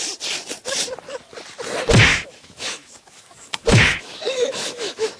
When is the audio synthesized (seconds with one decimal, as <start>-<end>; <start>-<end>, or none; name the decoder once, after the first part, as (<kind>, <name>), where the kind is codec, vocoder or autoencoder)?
2.1-5.2 (autoencoder, DAC-VAE)